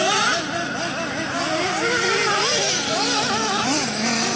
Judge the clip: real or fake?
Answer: real